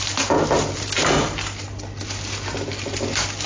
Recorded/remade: recorded